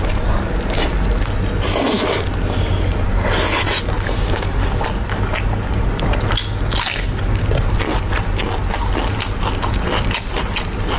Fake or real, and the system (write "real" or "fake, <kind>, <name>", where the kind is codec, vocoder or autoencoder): real